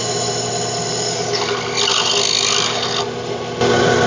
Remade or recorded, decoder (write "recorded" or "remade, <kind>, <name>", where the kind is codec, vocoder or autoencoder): recorded